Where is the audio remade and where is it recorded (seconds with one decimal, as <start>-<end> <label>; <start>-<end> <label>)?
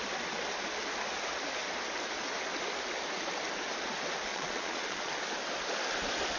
0.0-4.3 recorded; 4.3-5.1 remade; 5.1-6.4 recorded